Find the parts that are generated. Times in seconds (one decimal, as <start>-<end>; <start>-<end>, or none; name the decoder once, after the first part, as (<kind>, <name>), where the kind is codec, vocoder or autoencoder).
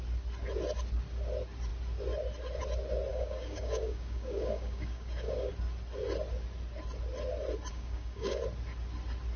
3.1-5.5 (codec, DAC); 7.7-8.4